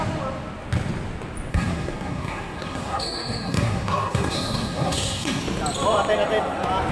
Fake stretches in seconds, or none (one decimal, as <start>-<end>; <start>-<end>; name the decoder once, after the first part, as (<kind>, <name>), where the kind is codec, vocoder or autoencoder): 1.5-5.4 (codec, SNAC)